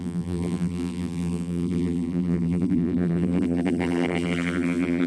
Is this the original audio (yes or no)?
no